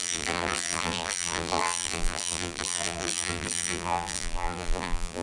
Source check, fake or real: fake